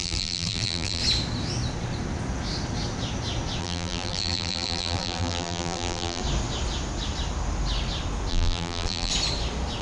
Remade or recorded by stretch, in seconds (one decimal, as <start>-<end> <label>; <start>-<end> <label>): 0.0-1.0 remade; 1.0-3.6 recorded; 3.6-6.2 remade; 6.2-8.3 recorded; 8.3-9.1 remade; 9.1-9.8 recorded